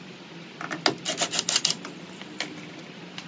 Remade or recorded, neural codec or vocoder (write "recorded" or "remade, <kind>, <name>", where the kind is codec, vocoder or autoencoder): recorded